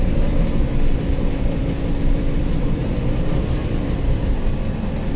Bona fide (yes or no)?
no